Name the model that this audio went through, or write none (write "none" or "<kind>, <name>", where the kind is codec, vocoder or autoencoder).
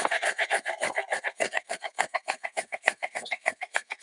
codec, SNAC